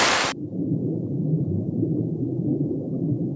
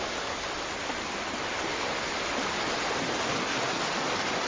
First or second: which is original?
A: second